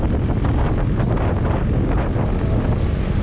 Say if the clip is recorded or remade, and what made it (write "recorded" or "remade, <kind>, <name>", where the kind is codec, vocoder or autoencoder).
recorded